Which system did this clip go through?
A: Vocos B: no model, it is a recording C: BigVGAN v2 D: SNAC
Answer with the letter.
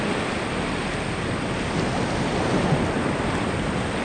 B